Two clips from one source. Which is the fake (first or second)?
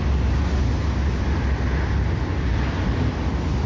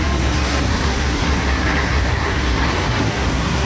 second